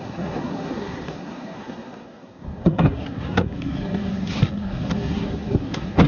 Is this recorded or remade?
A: remade